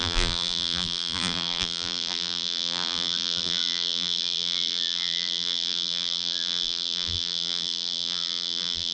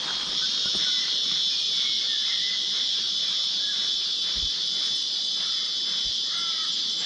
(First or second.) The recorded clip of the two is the second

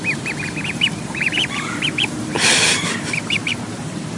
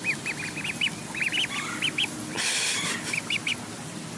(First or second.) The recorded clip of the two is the second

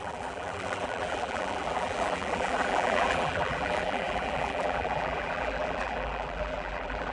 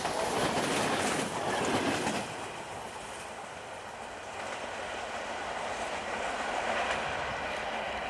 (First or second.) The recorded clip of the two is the second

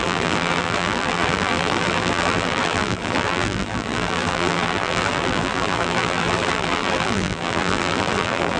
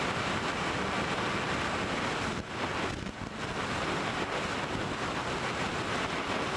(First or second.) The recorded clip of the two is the second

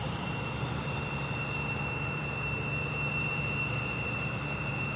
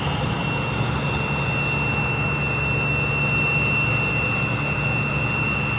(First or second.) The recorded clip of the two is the second